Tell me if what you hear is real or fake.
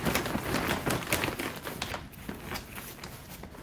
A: real